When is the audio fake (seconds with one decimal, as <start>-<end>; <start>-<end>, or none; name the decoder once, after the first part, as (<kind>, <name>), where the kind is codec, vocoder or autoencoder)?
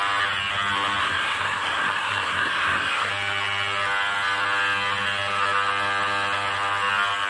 1.0-3.1 (codec, SNAC)